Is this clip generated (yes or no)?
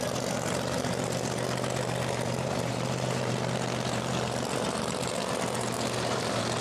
yes